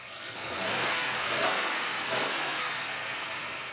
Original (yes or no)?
no